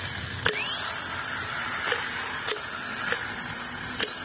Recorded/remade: recorded